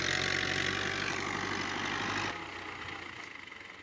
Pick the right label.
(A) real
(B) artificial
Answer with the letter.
A